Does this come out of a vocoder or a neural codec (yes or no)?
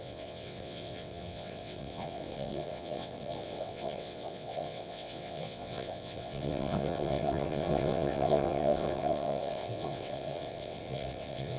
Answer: yes